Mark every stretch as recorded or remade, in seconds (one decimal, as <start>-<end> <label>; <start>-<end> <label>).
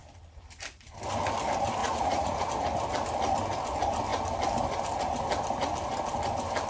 0.0-1.8 recorded; 1.8-2.5 remade; 2.5-6.7 recorded